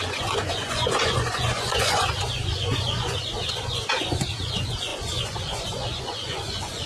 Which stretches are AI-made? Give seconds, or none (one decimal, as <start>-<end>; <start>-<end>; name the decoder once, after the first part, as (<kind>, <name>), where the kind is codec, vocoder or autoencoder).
0.0-6.9 (vocoder, Vocos)